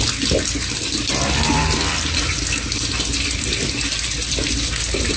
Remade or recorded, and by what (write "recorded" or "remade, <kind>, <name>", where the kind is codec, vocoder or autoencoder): recorded